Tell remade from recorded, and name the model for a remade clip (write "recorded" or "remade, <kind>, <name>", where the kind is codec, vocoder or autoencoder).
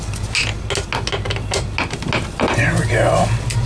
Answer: recorded